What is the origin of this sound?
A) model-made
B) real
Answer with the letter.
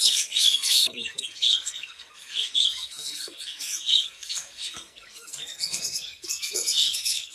A